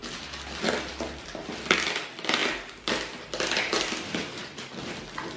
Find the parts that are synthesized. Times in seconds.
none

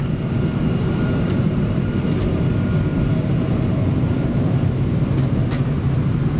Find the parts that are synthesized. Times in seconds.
none

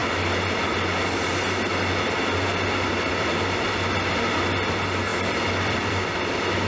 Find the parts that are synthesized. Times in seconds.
5.1-6.1 (vocoder, BigVGAN v2)